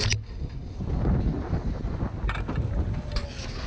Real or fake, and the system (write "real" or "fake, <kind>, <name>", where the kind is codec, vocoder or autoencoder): real